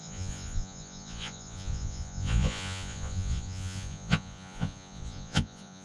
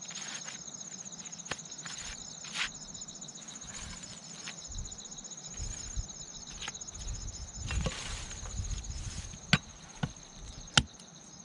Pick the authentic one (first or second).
second